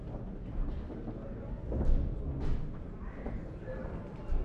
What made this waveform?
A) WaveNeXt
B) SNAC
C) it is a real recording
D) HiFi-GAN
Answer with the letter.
C